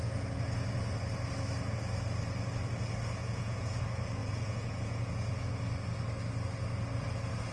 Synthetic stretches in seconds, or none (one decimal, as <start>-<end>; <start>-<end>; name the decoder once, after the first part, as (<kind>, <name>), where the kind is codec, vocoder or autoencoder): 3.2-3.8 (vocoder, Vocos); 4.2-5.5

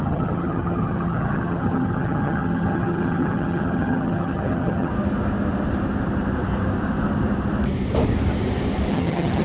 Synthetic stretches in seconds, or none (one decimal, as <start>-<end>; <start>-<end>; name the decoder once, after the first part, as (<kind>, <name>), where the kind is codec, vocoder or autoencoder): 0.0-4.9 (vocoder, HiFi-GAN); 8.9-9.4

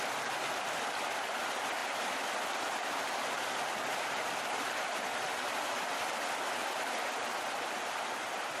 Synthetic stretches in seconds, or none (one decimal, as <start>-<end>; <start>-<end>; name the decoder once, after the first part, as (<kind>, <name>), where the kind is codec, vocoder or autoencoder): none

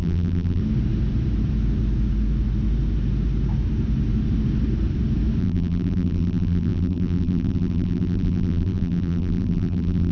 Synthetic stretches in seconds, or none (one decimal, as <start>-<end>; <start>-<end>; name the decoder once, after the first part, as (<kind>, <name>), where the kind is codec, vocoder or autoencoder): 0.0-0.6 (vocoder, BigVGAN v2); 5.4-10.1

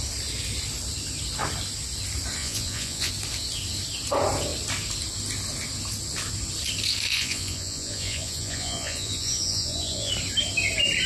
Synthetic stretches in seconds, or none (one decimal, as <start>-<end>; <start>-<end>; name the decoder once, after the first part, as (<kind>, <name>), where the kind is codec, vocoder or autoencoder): 2.4-3.1 (vocoder, Vocos); 7.1-10.1